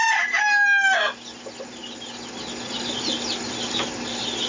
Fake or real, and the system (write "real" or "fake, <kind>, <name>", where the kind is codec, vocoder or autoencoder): real